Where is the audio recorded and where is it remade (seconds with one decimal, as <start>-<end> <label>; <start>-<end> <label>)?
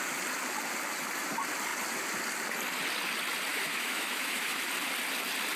0.0-3.5 recorded; 3.5-4.6 remade; 4.6-5.6 recorded